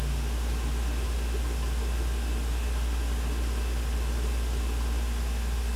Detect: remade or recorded recorded